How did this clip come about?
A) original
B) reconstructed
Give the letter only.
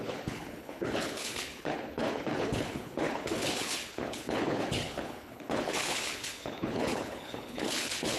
B